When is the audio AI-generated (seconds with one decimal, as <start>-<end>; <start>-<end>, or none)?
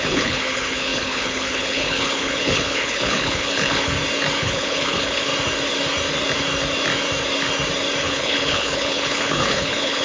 0.0-3.9; 4.4-5.3; 8.0-10.0